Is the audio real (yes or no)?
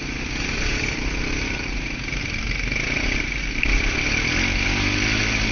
yes